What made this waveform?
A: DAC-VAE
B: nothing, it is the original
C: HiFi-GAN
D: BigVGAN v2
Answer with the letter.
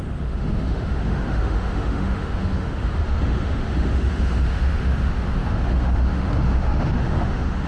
A